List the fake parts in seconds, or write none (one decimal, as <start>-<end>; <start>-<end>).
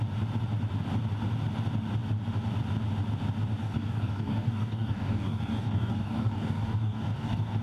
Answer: 3.6-7.6